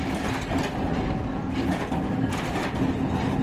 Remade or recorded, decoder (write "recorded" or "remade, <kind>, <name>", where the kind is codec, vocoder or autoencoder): recorded